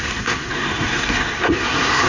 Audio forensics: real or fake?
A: fake